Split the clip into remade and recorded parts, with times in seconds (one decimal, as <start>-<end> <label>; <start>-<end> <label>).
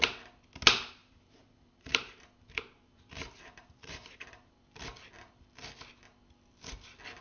0.0-1.0 recorded; 1.0-4.6 remade; 4.6-7.2 recorded